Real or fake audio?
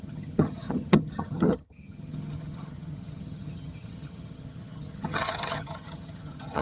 fake